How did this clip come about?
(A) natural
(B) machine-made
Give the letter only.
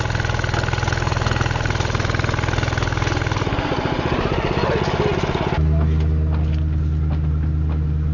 A